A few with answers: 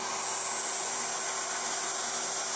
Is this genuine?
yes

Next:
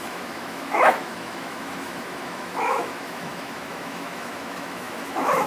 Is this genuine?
no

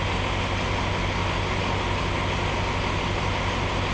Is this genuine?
yes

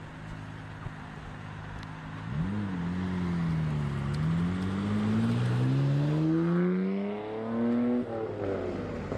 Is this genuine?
yes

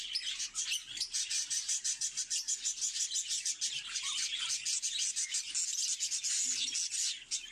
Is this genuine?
yes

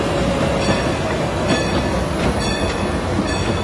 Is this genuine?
yes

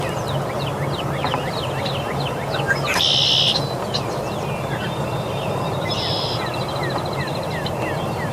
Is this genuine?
yes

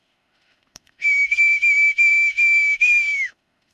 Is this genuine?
no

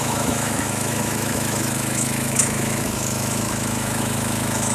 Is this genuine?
no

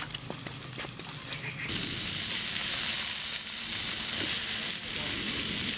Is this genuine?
yes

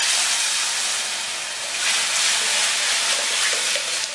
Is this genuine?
yes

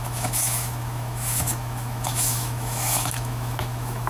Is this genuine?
no